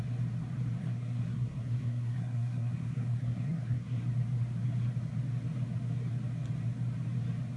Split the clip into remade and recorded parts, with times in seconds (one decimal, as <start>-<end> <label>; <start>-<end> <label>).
0.0-0.8 recorded; 0.8-4.0 remade; 4.0-7.6 recorded